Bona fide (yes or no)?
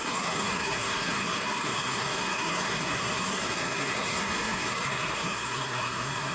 no